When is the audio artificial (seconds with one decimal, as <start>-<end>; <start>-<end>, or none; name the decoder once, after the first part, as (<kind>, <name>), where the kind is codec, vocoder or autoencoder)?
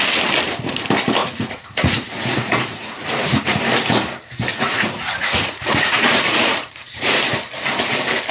1.2-3.6 (vocoder, Vocos); 4.5-7.2